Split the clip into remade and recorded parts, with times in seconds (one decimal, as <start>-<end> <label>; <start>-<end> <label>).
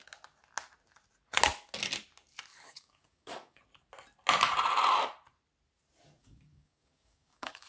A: 0.0-2.5 recorded; 2.5-3.6 remade; 3.6-6.2 recorded; 6.2-7.7 remade